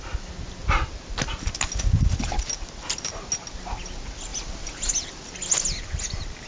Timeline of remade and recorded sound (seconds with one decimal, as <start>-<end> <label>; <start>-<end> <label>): 0.0-6.5 recorded